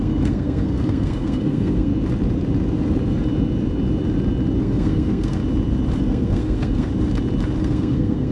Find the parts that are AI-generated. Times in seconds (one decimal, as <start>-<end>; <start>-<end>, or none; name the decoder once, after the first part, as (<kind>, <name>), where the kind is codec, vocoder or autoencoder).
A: 0.0-1.9 (codec, SNAC); 4.6-5.4; 6.0-6.9; 7.6-8.3

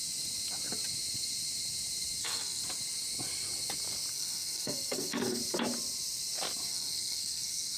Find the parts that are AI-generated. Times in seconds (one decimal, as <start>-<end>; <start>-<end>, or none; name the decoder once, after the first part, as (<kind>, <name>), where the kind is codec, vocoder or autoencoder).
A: 2.2-2.6 (codec, SNAC); 4.1-5.4; 6.7-7.8

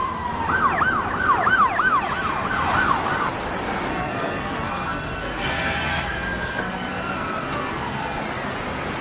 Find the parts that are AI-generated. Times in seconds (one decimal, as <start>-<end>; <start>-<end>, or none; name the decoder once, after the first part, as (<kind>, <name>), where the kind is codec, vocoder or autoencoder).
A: 3.9-8.2 (codec, SNAC)

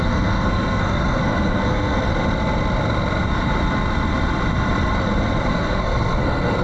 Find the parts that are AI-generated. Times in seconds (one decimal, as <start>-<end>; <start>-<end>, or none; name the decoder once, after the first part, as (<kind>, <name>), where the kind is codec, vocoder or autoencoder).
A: 0.0-2.1 (codec, SNAC); 5.5-6.6